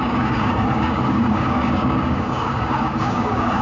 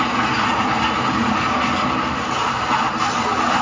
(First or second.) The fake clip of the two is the first